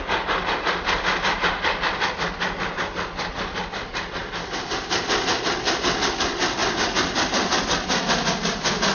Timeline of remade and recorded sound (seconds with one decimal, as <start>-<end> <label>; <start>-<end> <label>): 0.0-8.9 recorded